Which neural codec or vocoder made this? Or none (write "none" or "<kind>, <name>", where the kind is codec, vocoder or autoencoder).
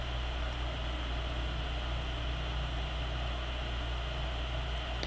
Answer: none